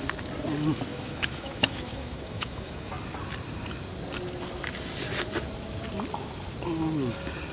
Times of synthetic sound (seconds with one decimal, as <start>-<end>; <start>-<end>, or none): 0.9-2.9